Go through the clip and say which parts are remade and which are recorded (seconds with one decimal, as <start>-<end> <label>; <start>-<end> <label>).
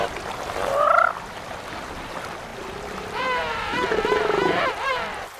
0.0-5.4 recorded